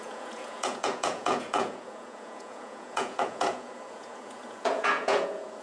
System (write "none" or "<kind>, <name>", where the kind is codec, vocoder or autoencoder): vocoder, Vocos